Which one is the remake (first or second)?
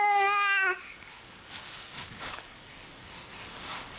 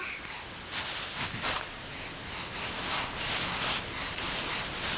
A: first